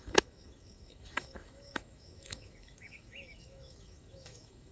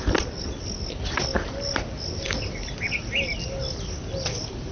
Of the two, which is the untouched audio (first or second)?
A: second